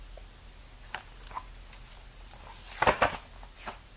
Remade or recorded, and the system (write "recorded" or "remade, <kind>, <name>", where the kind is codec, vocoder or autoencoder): recorded